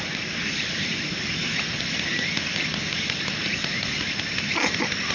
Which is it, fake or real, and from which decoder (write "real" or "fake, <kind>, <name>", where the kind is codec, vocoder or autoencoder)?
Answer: real